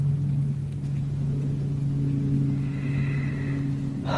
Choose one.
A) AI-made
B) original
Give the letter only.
B